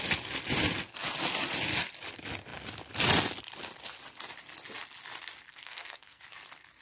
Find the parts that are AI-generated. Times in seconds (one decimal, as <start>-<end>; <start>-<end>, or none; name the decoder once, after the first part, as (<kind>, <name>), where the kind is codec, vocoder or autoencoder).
5.5-6.2 (codec, SNAC)